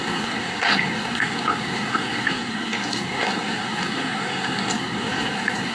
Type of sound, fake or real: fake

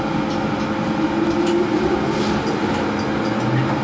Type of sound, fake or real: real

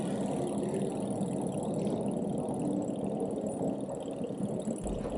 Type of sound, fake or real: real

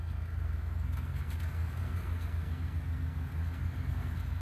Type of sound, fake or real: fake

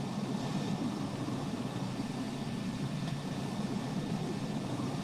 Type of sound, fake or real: real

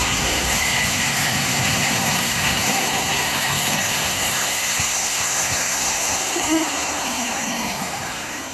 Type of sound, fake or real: fake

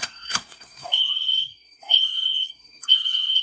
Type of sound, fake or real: fake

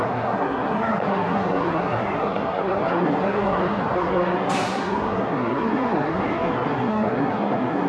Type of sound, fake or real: fake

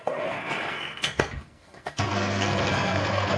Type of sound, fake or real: fake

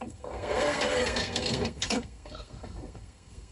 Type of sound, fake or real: fake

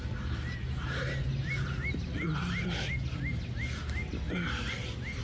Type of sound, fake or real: real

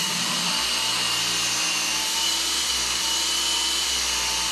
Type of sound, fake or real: real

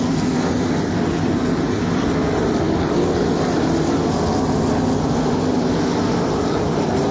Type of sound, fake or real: real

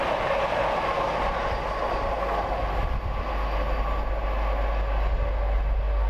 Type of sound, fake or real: real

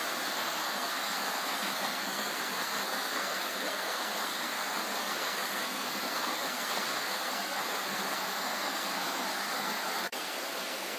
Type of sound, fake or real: fake